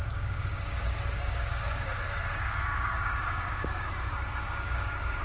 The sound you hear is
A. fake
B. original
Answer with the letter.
A